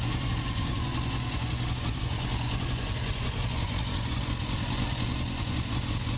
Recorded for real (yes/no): no